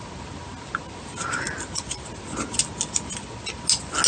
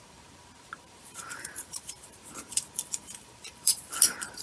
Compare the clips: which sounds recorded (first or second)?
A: first